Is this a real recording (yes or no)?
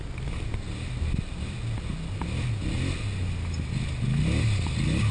yes